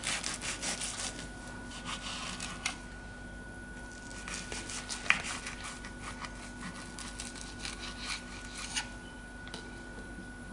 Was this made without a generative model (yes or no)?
yes